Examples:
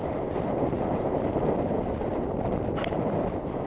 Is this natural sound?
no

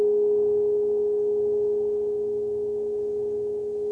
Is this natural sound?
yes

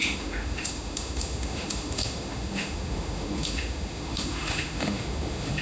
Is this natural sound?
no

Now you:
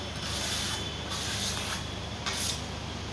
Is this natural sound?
yes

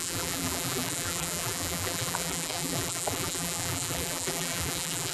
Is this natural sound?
no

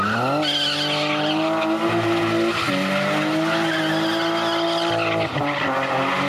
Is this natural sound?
yes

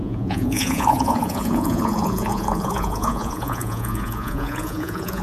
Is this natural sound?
no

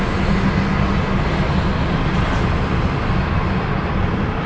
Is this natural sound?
yes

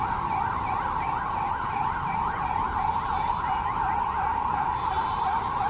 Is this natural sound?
yes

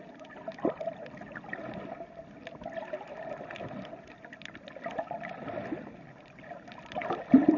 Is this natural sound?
yes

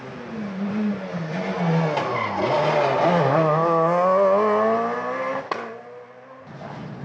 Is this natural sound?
yes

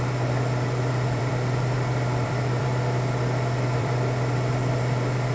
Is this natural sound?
no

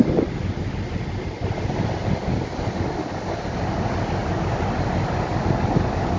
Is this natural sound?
yes